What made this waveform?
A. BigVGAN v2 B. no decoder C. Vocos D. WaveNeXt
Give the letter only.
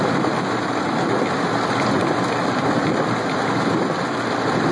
B